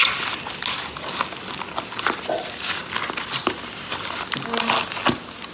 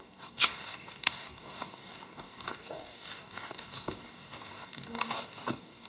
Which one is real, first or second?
first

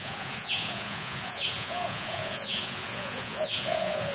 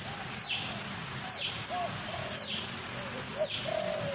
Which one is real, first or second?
second